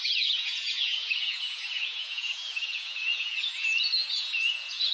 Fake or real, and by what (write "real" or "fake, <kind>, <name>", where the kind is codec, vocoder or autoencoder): fake, vocoder, Vocos